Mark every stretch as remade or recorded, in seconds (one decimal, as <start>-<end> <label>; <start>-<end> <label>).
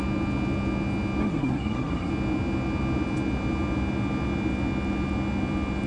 0.0-1.2 recorded; 1.2-2.1 remade; 2.1-5.9 recorded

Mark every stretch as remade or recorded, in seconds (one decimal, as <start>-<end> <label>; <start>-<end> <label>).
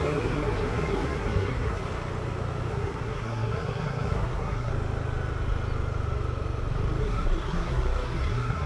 0.0-1.8 remade; 1.8-2.7 recorded; 2.7-4.7 remade; 4.7-7.0 recorded; 7.0-8.7 remade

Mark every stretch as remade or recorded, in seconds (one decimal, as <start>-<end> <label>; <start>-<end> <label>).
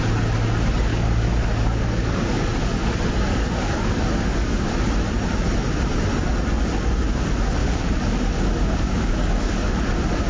0.0-0.9 recorded; 0.9-2.9 remade; 2.9-3.3 recorded; 3.3-4.7 remade; 4.7-7.6 recorded; 7.6-9.8 remade; 9.8-10.3 recorded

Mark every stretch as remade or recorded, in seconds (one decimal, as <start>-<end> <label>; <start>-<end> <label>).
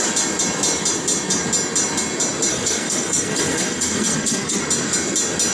0.0-2.5 recorded; 2.5-4.6 remade; 4.6-5.5 recorded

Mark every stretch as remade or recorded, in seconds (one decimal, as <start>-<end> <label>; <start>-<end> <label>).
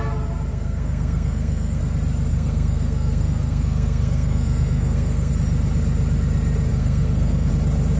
0.0-0.5 recorded; 0.5-1.8 remade; 1.8-2.3 recorded; 2.3-5.3 remade; 5.3-6.7 recorded; 6.7-7.5 remade; 7.5-8.0 recorded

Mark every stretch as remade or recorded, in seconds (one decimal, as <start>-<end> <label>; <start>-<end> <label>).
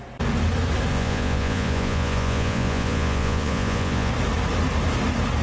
0.0-0.9 recorded; 0.9-4.1 remade; 4.1-5.4 recorded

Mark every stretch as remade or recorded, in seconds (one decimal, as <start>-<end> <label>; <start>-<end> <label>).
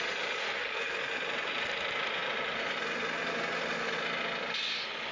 0.0-0.4 recorded; 0.4-1.1 remade; 1.1-5.1 recorded